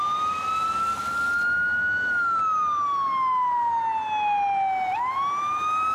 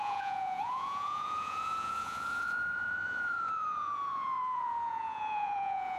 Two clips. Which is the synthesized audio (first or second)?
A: second